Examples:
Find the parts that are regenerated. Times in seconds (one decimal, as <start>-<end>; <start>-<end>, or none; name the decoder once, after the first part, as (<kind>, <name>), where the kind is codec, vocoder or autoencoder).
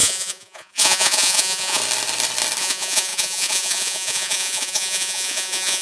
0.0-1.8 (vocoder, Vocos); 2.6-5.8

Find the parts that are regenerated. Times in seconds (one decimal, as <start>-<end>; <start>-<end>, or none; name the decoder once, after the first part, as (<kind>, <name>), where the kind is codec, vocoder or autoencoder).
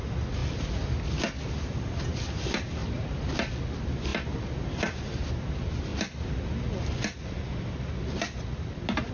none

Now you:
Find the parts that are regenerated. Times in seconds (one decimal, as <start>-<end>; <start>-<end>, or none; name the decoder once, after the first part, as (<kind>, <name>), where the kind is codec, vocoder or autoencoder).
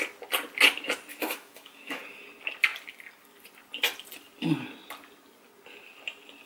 1.1-2.0 (autoencoder, DAC-VAE)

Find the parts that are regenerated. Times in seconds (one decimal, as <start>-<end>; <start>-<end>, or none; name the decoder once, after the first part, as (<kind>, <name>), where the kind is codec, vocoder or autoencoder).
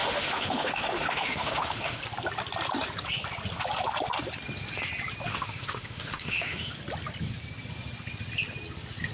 0.0-2.0 (autoencoder, DAC-VAE); 5.3-6.7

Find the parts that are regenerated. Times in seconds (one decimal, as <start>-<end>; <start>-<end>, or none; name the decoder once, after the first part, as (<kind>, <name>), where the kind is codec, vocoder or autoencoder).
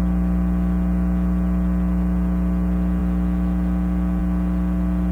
none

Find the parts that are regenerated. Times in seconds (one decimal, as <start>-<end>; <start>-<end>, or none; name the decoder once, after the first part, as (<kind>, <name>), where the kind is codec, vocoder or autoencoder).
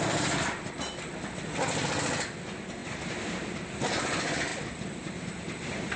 none